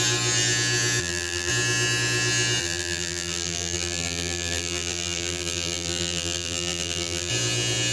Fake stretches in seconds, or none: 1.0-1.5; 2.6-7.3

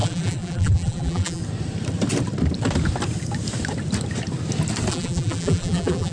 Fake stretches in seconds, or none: 0.0-1.4; 4.9-6.1

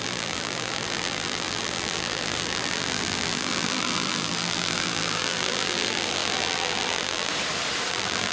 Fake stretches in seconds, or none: 0.0-7.3; 7.9-8.3

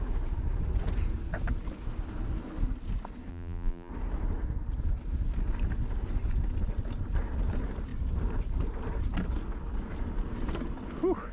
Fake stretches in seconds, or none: 3.3-3.9

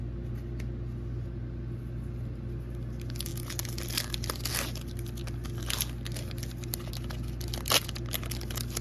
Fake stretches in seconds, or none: none

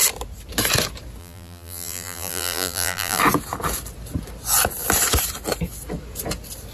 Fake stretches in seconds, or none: 1.2-3.2

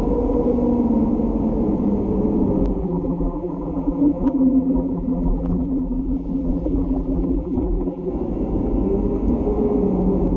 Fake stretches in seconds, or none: 2.8-8.1